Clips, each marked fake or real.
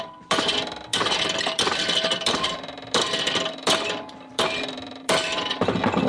fake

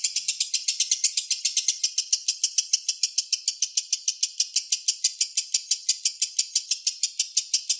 real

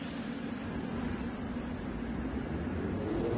real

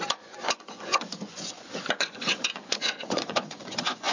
fake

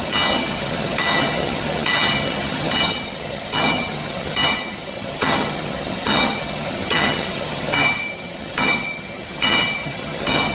fake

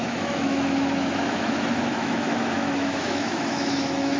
fake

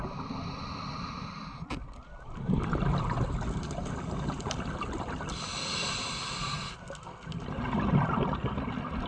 real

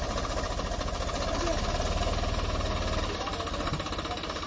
real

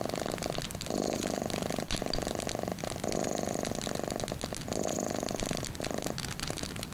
real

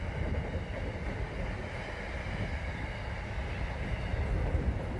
real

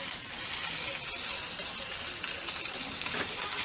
real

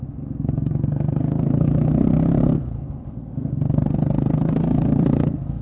fake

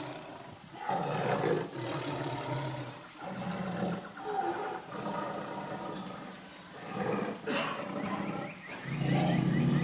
real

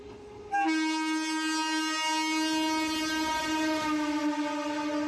real